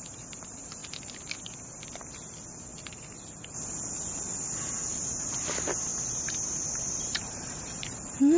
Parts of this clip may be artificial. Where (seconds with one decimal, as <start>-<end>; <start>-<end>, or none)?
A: 0.0-0.8; 4.7-5.9; 7.0-8.4

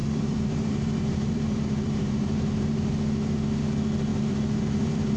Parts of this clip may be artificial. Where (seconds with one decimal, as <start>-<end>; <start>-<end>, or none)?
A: 0.0-2.9; 4.1-5.2